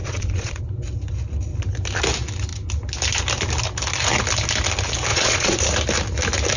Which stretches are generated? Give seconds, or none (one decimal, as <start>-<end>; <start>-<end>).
0.0-0.6; 5.1-5.6